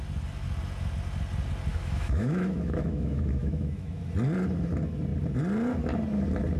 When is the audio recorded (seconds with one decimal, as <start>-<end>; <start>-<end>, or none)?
0.0-1.7; 4.0-6.6

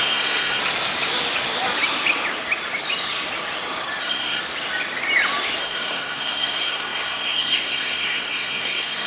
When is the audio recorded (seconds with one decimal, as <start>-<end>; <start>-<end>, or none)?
0.6-4.0; 4.4-5.6